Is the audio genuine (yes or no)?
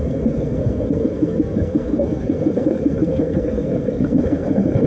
no